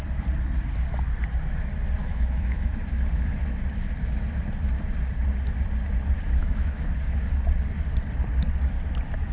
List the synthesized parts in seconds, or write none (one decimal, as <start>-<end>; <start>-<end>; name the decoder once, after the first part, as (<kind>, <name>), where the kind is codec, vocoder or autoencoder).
2.0-2.7 (autoencoder, DAC-VAE); 6.4-6.9